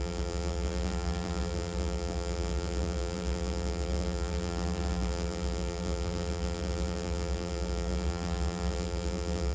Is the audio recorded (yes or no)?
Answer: no